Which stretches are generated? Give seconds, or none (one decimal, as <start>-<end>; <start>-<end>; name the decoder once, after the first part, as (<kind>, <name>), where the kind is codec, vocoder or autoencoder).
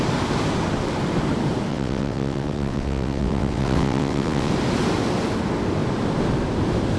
1.7-4.5 (vocoder, WaveNeXt)